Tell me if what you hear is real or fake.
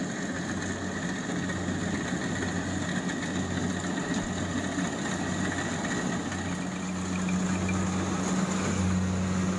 real